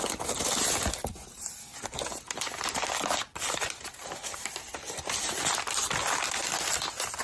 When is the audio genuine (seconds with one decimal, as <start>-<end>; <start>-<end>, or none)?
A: 0.0-7.2